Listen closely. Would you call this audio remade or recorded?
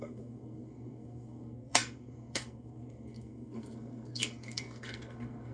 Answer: remade